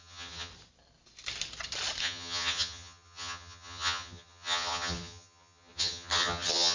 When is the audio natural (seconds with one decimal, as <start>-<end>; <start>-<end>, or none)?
0.5-2.0